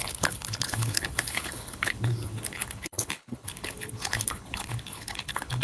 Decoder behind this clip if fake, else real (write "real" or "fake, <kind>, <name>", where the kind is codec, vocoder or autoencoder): fake, codec, HILCodec